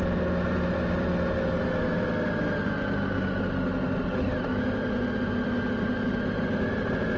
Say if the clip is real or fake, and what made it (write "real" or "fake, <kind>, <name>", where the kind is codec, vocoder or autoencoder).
real